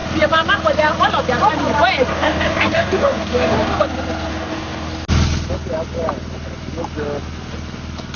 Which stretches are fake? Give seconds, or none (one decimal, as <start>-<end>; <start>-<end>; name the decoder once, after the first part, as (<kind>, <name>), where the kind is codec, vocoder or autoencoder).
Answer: 2.1-3.8 (codec, DAC); 4.3-4.9